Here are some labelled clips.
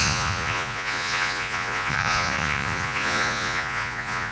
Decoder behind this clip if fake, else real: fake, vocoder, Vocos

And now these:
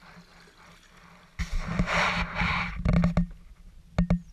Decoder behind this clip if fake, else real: real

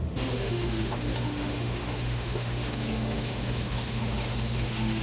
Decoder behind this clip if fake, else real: fake, autoencoder, DAC-VAE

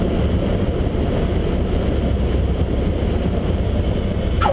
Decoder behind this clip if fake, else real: fake, vocoder, BigVGAN v2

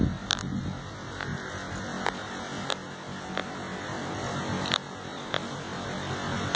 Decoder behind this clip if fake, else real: real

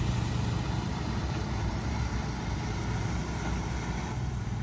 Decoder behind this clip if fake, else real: fake, vocoder, BigVGAN v2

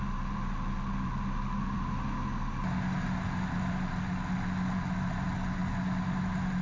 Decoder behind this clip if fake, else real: real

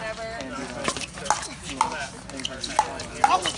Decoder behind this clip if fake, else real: real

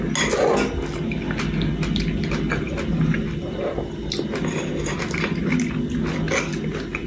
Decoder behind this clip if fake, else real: real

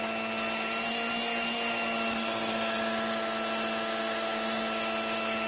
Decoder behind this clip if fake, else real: real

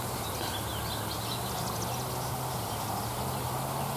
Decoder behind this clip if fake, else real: real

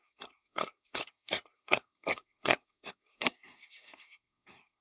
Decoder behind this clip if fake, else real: fake, codec, SNAC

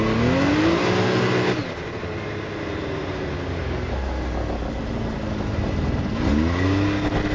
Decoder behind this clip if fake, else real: real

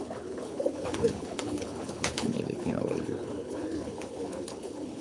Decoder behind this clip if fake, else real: fake, codec, HILCodec